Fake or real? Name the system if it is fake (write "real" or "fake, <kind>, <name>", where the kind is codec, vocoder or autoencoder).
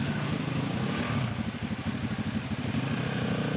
real